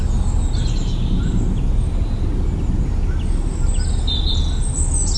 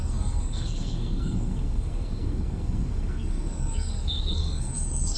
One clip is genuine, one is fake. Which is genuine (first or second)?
first